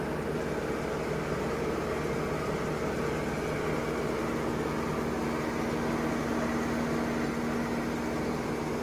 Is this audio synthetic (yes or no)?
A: no